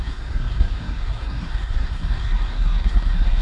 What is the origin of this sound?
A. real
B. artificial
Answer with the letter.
B